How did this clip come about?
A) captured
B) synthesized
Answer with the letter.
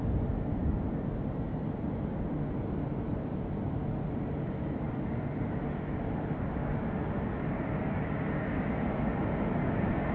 A